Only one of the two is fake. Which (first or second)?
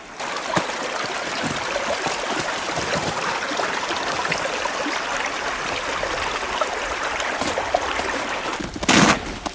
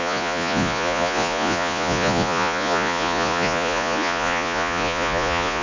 second